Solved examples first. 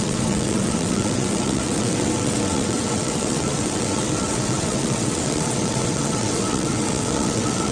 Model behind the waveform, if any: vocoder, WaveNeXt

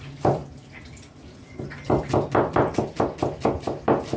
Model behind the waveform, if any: none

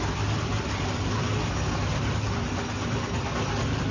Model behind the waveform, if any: none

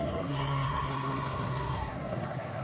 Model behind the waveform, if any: codec, SNAC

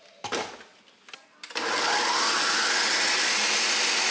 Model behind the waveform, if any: none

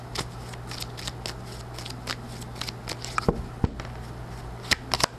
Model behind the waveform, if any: none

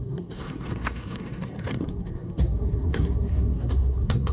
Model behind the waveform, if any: codec, SNAC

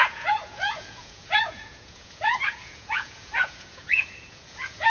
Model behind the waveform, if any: vocoder, Vocos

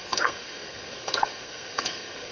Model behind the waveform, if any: codec, SNAC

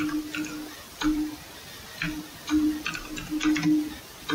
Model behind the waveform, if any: none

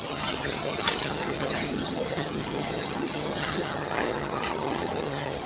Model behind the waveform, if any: vocoder, HiFi-GAN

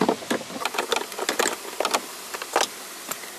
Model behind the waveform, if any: none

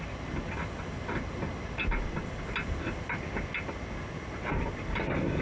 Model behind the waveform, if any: none